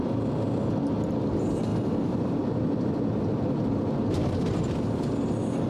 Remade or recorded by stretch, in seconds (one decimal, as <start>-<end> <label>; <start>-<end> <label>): 0.0-1.7 recorded; 1.7-5.1 remade; 5.1-5.7 recorded